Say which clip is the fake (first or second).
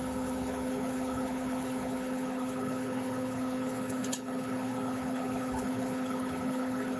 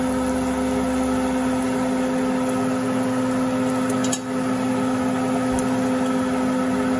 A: first